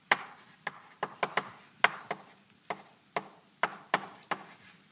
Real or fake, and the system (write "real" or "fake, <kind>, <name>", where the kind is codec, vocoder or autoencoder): real